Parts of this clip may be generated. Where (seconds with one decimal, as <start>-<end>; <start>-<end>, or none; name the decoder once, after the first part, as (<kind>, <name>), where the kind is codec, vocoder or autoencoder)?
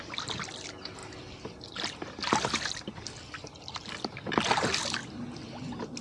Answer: none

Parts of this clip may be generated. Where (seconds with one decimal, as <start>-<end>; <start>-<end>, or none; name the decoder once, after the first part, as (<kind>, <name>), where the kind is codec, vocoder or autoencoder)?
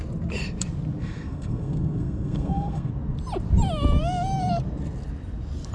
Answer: 1.0-2.9 (codec, SNAC)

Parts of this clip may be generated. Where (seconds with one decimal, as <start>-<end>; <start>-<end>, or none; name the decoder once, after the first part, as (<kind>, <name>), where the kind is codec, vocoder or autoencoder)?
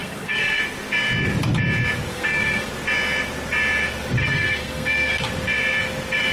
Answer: 0.0-0.6 (codec, SNAC); 2.1-2.7; 4.2-5.2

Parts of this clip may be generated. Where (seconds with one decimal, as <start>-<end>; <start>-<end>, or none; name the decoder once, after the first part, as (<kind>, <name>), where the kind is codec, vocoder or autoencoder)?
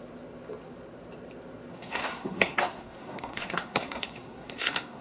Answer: 1.7-5.0 (codec, SNAC)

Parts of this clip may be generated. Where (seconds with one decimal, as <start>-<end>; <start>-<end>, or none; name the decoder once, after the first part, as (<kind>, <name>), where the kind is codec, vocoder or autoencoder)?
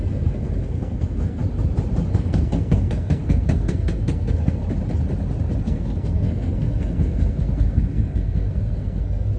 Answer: 0.0-1.4 (codec, SNAC); 2.1-4.6; 5.6-9.4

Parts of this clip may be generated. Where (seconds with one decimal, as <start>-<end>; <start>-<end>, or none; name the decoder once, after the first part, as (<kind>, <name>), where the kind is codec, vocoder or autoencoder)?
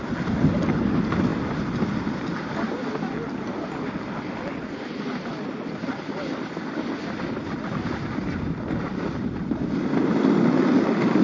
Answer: none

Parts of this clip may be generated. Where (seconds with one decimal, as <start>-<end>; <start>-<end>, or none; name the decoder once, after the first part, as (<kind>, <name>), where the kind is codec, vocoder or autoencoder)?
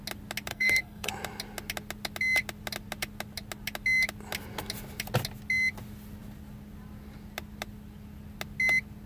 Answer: 0.5-1.1 (codec, SNAC)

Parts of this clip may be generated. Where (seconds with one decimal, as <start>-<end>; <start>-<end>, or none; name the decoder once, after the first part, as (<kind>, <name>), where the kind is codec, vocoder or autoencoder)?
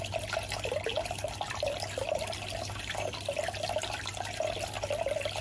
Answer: none